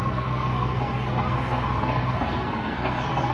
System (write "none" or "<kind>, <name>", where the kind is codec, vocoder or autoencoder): codec, SNAC